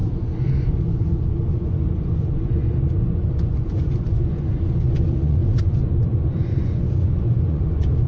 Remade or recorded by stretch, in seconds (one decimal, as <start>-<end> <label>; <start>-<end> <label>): 0.0-8.1 remade